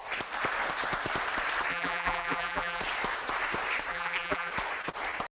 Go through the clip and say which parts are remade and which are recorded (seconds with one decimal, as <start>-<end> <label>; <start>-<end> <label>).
0.0-1.7 recorded; 1.7-2.8 remade; 2.8-3.9 recorded; 3.9-4.5 remade; 4.5-5.4 recorded